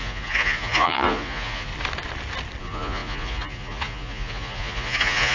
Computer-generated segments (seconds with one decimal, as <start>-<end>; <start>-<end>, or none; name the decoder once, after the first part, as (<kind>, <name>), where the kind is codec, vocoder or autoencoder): 0.0-1.7 (vocoder, Vocos); 2.6-5.3